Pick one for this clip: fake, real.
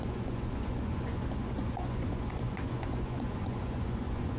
fake